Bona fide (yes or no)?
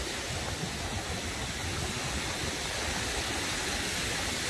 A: yes